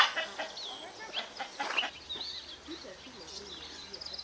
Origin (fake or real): real